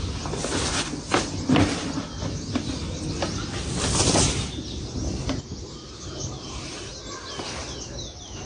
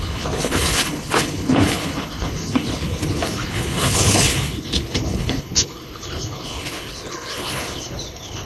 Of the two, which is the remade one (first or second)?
second